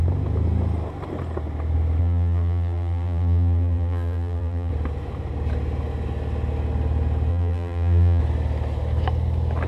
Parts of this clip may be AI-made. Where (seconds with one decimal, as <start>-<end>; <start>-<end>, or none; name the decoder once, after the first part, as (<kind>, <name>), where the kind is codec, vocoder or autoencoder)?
2.0-4.7 (vocoder, BigVGAN v2); 7.3-8.2